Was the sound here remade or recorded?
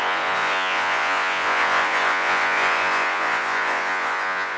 remade